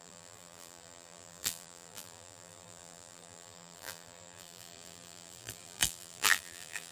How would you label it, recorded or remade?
remade